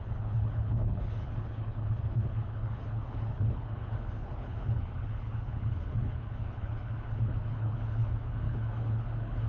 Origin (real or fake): fake